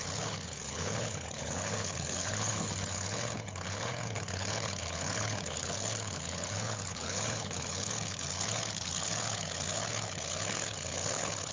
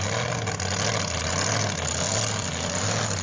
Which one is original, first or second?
second